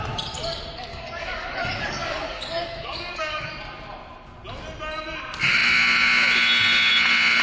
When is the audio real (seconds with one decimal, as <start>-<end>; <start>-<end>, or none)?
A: 0.0-0.9; 3.5-7.4